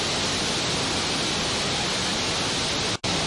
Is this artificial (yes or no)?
no